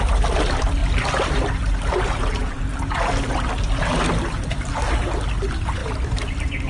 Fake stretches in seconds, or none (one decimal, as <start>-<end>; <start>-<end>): none